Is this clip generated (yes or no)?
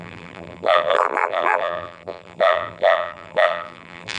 yes